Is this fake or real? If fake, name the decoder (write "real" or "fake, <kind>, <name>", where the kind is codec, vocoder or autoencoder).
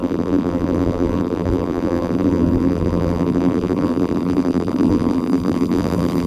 fake, vocoder, BigVGAN v2